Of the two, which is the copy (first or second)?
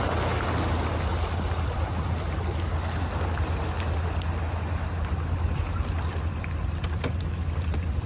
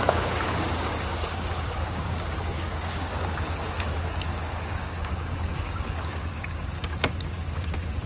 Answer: second